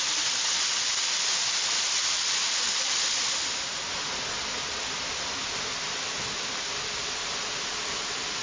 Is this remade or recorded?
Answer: recorded